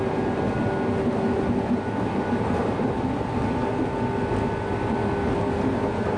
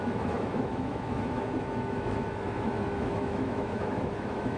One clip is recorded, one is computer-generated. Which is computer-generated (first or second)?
second